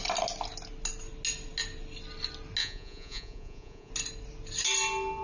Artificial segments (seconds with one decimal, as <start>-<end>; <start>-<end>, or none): 2.6-3.9